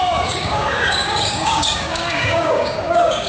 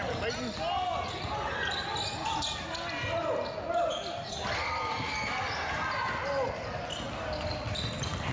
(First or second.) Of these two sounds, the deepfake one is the first